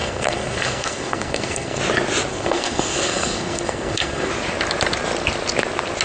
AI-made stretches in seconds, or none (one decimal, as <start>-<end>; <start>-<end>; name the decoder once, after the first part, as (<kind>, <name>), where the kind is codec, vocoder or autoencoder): 0.0-1.8 (codec, SNAC); 2.3-4.3